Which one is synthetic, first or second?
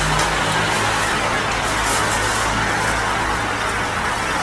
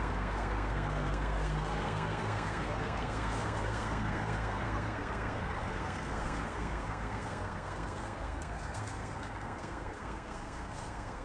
second